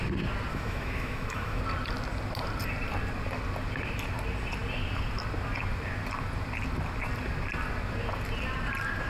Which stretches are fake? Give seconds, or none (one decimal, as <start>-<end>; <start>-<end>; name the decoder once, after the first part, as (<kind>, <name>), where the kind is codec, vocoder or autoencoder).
0.5-1.6 (autoencoder, DAC-VAE)